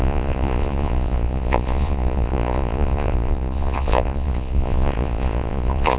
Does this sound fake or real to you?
fake